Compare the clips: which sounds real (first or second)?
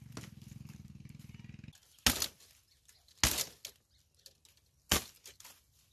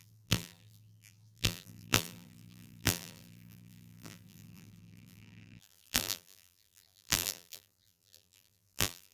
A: first